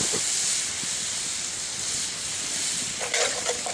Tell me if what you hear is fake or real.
real